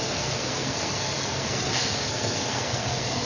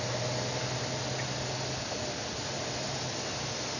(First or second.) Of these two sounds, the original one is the second